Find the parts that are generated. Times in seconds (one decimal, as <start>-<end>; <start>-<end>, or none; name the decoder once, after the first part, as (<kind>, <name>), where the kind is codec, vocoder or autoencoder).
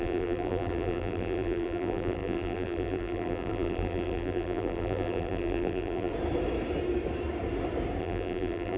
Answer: 0.0-6.1 (vocoder, BigVGAN v2); 8.0-8.8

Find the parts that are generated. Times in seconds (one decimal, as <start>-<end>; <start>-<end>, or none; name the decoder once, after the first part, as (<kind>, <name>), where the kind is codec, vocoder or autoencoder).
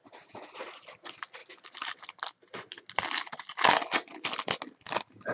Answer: none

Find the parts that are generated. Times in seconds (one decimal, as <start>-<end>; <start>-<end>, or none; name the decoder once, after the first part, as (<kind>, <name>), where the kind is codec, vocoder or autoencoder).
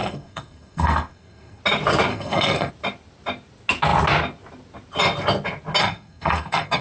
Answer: 0.0-1.6 (codec, SNAC); 2.1-2.7; 5.8-6.8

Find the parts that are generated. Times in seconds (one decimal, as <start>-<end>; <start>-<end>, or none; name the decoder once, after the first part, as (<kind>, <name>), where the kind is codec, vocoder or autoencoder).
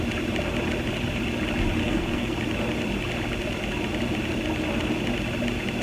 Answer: 1.8-2.4 (codec, SNAC)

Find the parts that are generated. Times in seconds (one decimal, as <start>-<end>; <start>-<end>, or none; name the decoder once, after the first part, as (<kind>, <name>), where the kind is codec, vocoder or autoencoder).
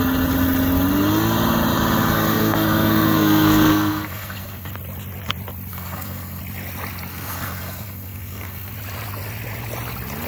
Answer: 2.3-4.7 (codec, SNAC); 5.7-6.4; 7.1-8.7